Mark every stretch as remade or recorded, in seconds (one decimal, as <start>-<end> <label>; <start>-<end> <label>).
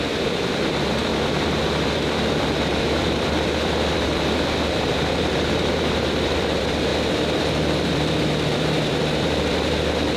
0.0-10.2 remade